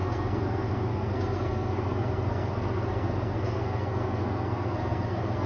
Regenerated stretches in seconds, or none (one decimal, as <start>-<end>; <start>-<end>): 0.0-5.5